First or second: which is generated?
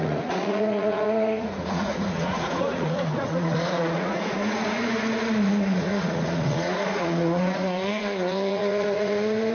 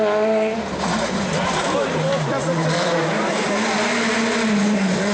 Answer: first